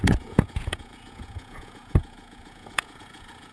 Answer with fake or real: fake